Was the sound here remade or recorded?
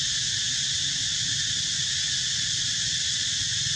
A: recorded